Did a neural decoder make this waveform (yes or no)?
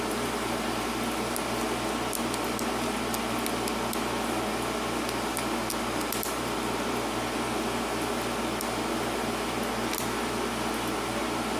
no